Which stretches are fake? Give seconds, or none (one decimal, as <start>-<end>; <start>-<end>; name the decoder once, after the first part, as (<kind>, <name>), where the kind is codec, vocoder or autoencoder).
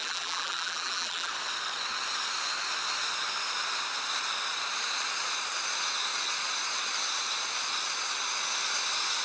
0.0-1.3 (vocoder, BigVGAN v2)